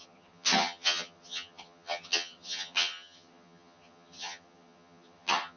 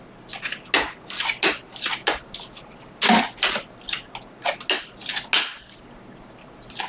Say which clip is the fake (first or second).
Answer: first